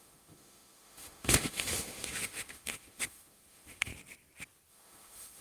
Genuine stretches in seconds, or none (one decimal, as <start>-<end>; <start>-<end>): 3.9-4.7